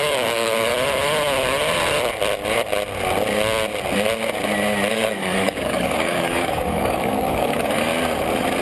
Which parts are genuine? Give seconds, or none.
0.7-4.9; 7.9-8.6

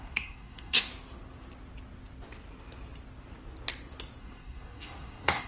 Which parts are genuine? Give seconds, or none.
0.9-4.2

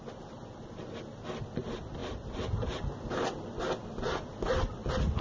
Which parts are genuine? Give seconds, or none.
0.0-5.2

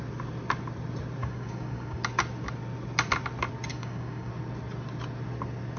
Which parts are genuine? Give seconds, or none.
0.0-1.2; 2.0-3.7; 4.3-5.8

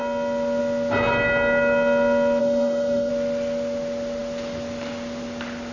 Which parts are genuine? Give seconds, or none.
0.0-2.4; 3.1-5.7

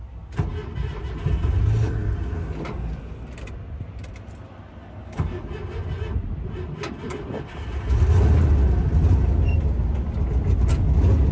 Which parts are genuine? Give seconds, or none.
0.0-4.8; 5.4-11.3

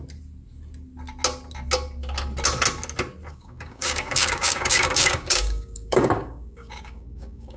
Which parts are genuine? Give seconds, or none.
0.0-3.3